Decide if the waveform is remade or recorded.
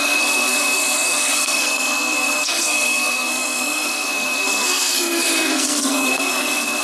remade